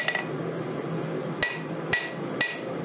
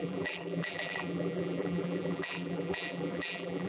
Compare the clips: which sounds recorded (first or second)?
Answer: first